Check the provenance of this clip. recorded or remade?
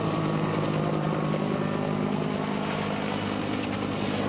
recorded